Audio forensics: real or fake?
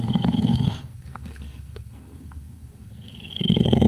fake